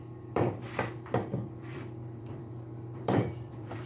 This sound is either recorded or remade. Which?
remade